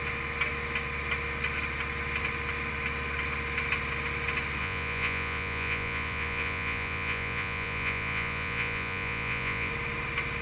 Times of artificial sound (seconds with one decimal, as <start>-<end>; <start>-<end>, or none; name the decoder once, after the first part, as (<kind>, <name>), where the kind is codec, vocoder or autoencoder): 4.6-9.7 (vocoder, Vocos)